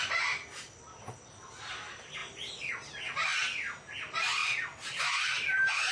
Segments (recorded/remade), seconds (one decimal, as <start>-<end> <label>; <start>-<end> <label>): 0.0-5.9 recorded